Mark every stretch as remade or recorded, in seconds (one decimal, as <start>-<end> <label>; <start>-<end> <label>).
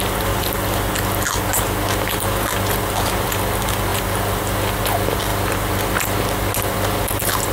0.0-7.5 recorded